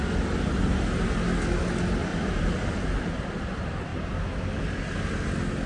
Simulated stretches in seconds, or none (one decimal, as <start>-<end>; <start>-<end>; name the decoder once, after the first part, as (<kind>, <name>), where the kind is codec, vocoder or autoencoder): 2.1-3.1 (vocoder, BigVGAN v2)